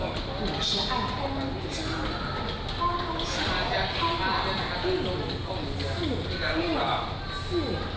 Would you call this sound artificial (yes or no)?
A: no